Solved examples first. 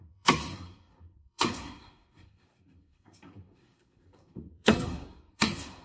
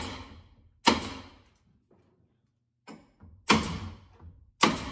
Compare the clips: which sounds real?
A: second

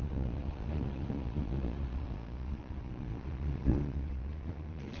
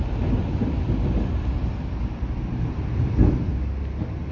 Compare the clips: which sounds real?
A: second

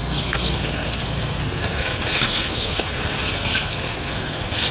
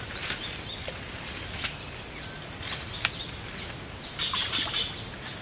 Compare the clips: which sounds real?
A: second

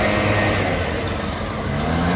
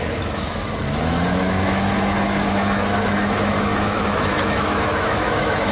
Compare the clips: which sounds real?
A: first